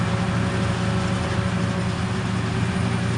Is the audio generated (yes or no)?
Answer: no